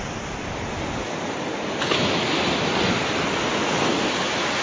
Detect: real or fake real